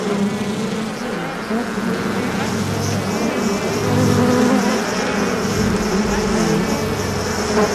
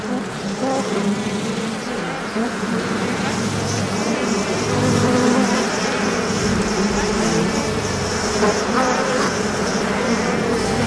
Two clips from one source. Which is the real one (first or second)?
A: first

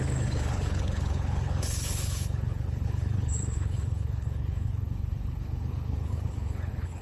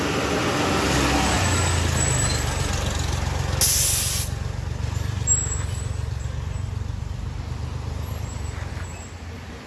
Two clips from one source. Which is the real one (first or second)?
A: second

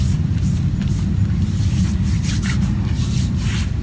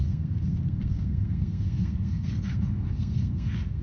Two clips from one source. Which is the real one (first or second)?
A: first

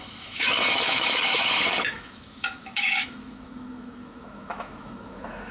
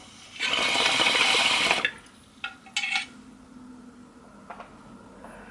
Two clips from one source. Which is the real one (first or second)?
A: second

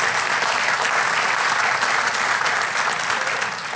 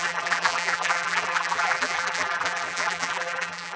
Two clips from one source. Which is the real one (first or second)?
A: first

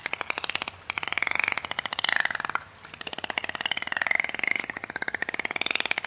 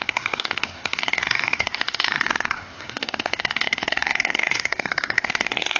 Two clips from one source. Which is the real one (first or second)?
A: first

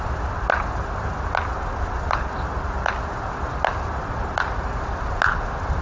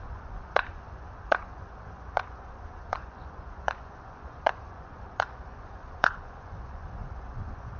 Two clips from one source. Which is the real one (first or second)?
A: first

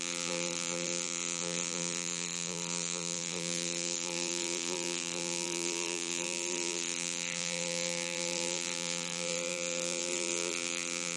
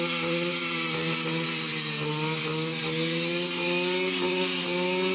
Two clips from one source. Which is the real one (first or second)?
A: second